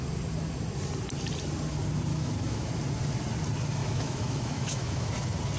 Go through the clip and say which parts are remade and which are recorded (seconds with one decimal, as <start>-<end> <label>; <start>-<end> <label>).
0.0-2.1 recorded; 2.1-2.7 remade; 2.7-3.8 recorded; 3.8-5.1 remade; 5.1-5.6 recorded